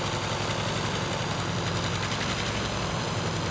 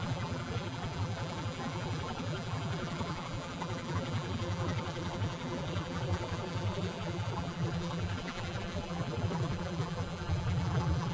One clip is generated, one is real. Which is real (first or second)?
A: first